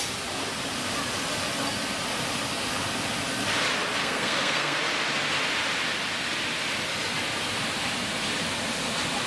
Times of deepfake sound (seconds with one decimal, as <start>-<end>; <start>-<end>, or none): 4.0-4.8